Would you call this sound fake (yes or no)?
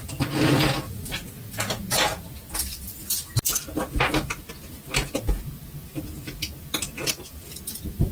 no